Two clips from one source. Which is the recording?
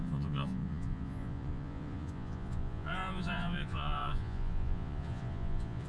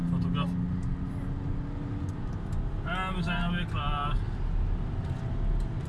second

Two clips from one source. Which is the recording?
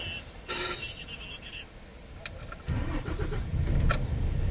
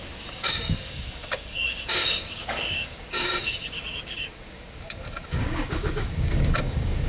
first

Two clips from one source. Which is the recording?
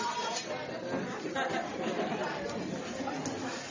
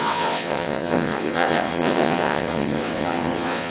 first